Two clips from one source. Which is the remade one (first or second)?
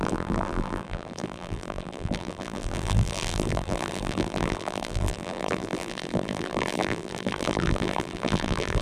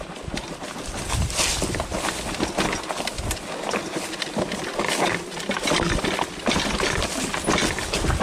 first